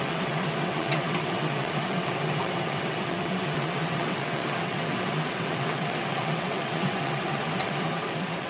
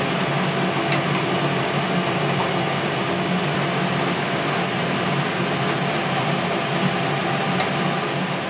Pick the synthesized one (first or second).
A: first